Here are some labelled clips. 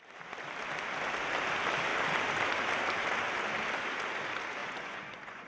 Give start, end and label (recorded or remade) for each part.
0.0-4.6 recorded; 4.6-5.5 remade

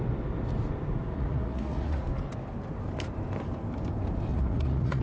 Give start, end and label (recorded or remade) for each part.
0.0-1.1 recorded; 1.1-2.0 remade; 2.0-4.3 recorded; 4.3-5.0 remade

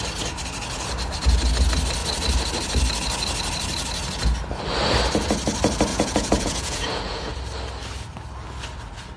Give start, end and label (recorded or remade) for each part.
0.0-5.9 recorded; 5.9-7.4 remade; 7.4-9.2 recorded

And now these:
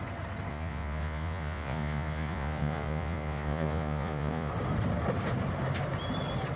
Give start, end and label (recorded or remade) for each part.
0.0-0.5 recorded; 0.5-4.5 remade; 4.5-6.6 recorded

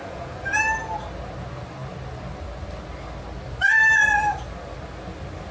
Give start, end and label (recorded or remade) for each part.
0.0-0.6 remade; 0.6-5.5 recorded

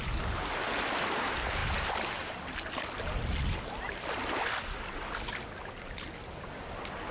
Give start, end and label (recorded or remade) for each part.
0.0-7.1 recorded